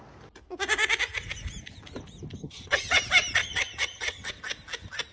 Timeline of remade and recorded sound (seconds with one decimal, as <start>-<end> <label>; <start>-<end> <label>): 0.0-2.4 recorded; 2.4-3.0 remade; 3.0-3.4 recorded; 3.4-4.3 remade; 4.3-5.1 recorded